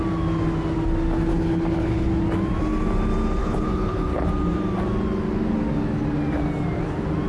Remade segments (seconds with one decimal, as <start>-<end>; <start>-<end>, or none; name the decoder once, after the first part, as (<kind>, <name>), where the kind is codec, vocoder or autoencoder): 1.3-2.1 (codec, HILCodec); 3.4-4.3